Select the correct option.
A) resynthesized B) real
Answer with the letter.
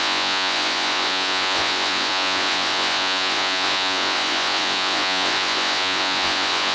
A